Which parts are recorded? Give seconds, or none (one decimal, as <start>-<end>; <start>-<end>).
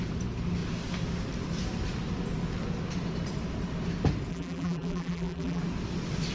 0.0-4.3; 5.6-6.3